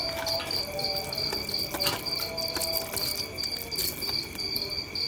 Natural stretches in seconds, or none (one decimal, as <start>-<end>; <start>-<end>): 0.0-5.1

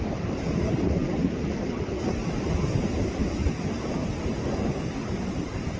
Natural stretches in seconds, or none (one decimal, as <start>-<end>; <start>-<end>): 0.0-5.8